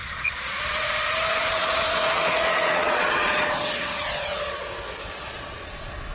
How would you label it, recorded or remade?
remade